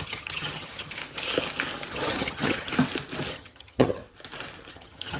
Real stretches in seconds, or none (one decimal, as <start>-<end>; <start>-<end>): 1.0-1.9; 2.7-3.3; 4.0-4.7